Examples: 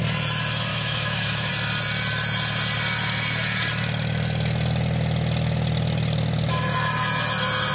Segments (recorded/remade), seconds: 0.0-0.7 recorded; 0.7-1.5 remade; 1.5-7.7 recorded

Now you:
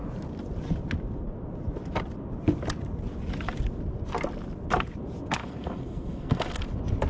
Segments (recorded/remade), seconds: 0.0-5.4 recorded; 5.4-6.6 remade; 6.6-7.1 recorded

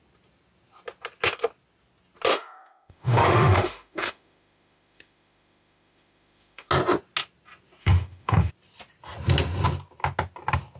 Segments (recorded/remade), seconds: 0.0-2.3 recorded; 2.3-6.7 remade; 6.7-7.8 recorded; 7.8-8.5 remade; 8.5-10.8 recorded

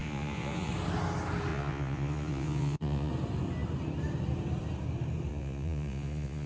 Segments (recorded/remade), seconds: 0.0-0.7 remade; 0.7-1.5 recorded; 1.5-3.1 remade; 3.1-5.3 recorded; 5.3-6.5 remade